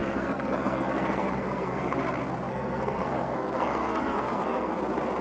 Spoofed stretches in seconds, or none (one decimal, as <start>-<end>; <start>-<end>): 0.0-2.0; 2.5-4.8